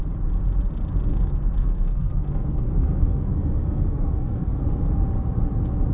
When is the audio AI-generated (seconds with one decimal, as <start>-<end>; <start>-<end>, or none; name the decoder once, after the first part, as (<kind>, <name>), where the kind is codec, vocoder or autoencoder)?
1.1-4.6 (codec, SNAC)